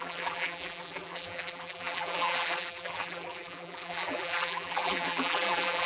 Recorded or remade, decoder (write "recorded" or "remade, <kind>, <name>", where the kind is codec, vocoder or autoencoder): remade, vocoder, BigVGAN v2